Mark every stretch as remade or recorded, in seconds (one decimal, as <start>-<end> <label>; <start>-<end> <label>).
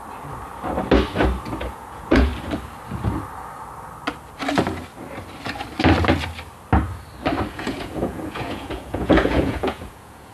0.0-1.7 recorded; 1.7-2.3 remade; 2.3-7.5 recorded; 7.5-10.3 remade